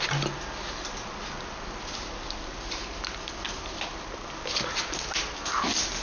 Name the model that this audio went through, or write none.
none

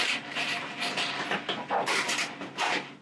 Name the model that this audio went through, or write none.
vocoder, BigVGAN v2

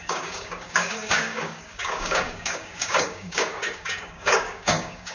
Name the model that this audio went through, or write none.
codec, DAC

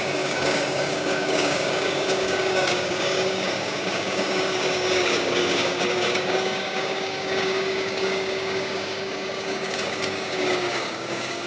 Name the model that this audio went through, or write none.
codec, DAC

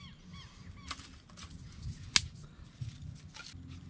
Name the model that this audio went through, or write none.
none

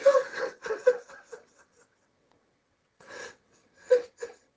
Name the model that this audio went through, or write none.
vocoder, WaveNeXt